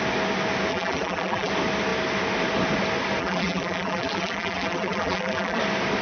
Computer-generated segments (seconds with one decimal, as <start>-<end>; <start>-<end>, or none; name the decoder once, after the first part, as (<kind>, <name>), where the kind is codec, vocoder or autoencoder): 0.7-1.5 (vocoder, BigVGAN v2); 3.2-5.6